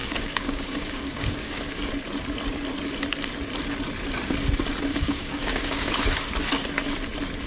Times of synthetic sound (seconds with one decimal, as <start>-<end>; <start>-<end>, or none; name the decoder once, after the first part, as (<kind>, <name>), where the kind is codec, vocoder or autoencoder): 0.0-1.9 (codec, DAC); 4.9-5.9